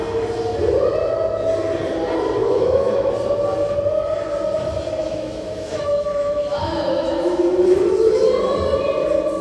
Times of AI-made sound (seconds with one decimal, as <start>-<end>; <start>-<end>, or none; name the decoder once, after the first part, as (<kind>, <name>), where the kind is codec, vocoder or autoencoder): 2.4-3.1 (autoencoder, DAC-VAE); 5.0-7.4